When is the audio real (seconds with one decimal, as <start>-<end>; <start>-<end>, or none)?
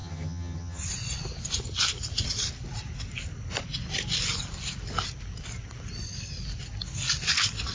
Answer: 0.8-7.7